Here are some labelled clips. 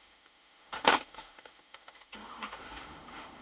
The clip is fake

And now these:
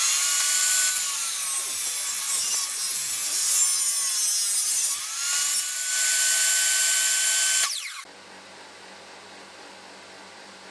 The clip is real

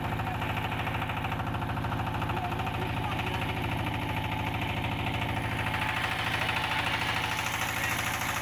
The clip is real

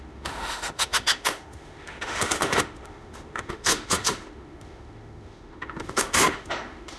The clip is fake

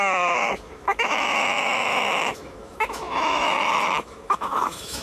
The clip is fake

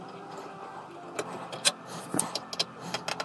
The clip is real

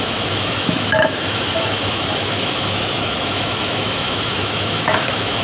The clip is fake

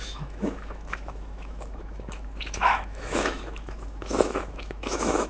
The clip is fake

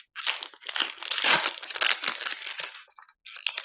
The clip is real